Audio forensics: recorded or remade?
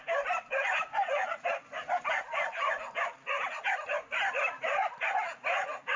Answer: recorded